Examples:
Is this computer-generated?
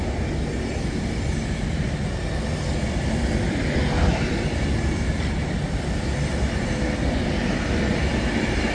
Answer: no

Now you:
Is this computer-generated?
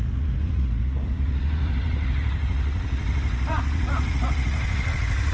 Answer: yes